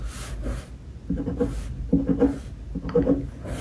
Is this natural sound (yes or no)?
yes